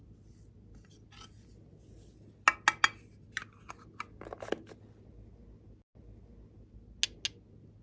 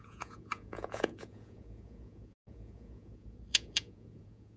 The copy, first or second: second